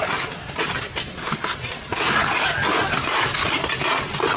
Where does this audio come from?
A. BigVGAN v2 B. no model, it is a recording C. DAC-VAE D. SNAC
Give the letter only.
B